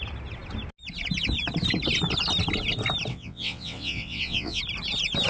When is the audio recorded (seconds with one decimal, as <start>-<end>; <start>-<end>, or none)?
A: 0.0-3.1; 4.6-5.3